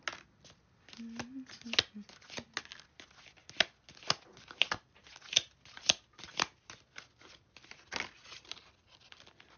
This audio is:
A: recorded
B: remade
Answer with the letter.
A